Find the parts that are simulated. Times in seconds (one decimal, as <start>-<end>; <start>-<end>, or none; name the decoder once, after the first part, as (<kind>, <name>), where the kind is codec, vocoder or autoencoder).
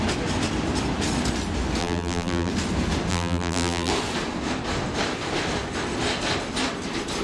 1.8-2.5 (vocoder, BigVGAN v2); 3.1-3.9